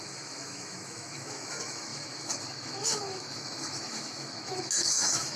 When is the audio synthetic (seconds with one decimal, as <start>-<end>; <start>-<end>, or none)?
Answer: 0.0-5.4